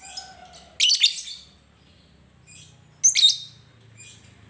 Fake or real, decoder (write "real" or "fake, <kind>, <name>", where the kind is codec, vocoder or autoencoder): real